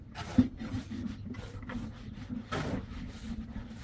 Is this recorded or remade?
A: recorded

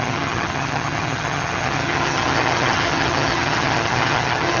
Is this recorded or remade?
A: remade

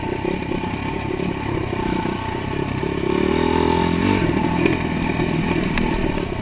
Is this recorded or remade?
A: recorded